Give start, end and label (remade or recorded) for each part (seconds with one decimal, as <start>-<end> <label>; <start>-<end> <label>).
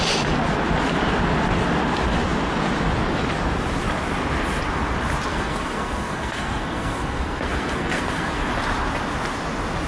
0.0-5.3 recorded; 5.3-8.5 remade; 8.5-9.9 recorded